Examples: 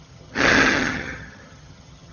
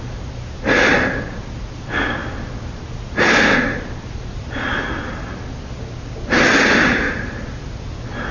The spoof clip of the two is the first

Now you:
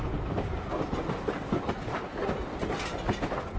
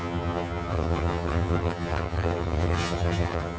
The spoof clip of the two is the second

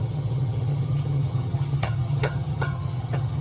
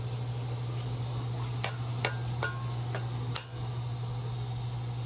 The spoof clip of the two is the first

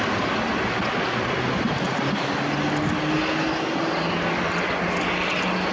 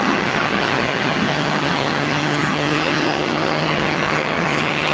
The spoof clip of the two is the second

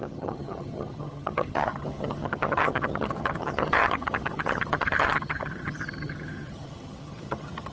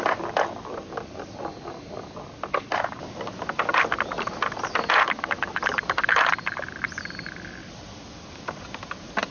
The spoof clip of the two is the first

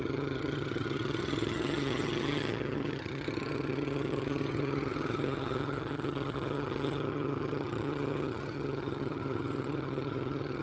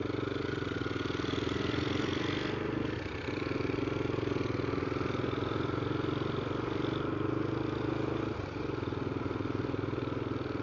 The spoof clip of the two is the first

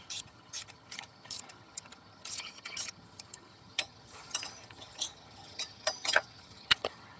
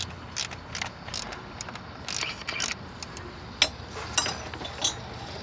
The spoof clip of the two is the first